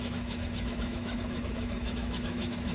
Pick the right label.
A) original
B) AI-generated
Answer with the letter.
B